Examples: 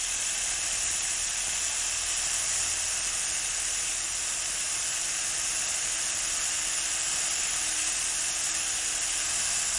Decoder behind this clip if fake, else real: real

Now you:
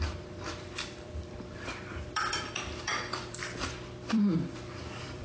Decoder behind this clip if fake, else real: fake, vocoder, BigVGAN v2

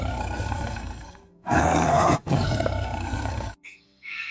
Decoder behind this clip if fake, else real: fake, codec, SNAC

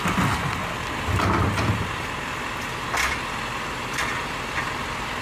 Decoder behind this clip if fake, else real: real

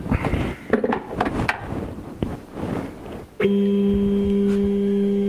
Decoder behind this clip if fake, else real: real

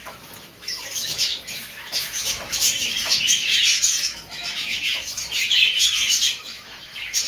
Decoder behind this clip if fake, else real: fake, autoencoder, DAC-VAE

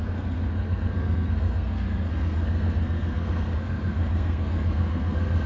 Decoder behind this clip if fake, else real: fake, codec, SNAC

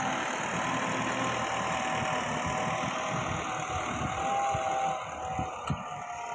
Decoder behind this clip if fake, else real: real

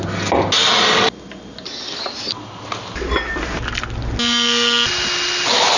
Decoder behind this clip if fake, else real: real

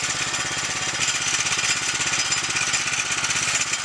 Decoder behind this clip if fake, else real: real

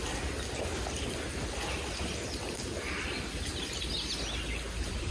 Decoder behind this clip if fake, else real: real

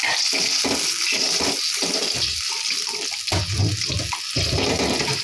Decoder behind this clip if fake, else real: real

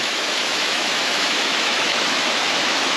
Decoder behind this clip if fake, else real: fake, autoencoder, DAC-VAE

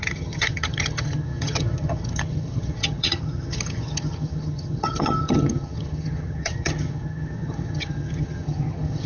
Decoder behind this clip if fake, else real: fake, vocoder, HiFi-GAN